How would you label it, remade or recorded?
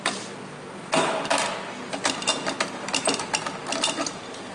recorded